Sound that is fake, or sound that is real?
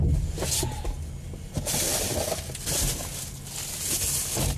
real